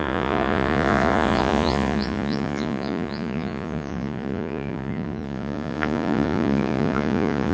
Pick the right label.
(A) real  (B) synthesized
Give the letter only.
B